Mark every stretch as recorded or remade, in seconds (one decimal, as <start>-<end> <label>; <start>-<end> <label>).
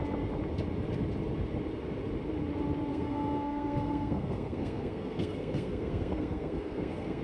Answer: 0.0-2.9 recorded; 2.9-7.2 remade